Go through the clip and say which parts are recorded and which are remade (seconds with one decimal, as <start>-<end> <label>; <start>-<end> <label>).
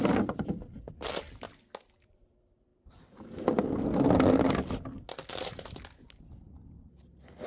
0.0-7.5 recorded